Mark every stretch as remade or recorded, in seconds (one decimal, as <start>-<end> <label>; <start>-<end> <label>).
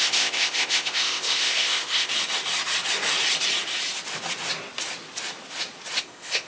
0.0-2.1 remade; 2.1-6.0 recorded; 6.0-6.5 remade